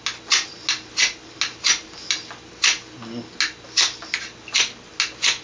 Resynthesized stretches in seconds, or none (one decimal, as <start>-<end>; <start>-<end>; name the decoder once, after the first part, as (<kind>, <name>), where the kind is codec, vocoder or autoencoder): none